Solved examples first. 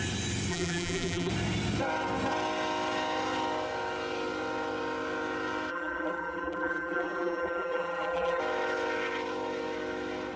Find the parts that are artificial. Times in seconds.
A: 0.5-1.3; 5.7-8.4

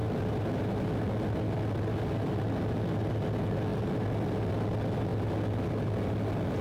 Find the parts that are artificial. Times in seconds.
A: none

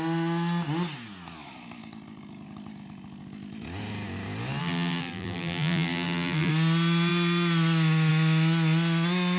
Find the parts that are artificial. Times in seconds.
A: 4.6-6.5

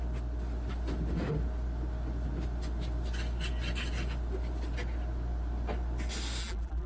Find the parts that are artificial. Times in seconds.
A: 6.4-6.9

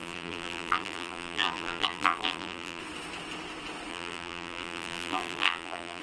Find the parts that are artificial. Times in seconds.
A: 0.0-2.8; 3.9-6.0

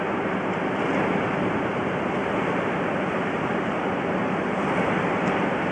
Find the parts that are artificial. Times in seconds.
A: 2.2-4.7

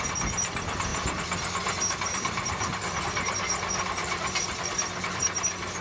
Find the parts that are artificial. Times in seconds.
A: 0.9-3.0; 4.0-5.0